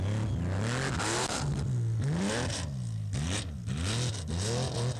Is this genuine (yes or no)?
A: yes